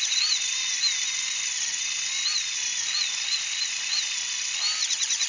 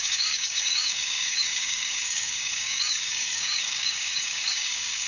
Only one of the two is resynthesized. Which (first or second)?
second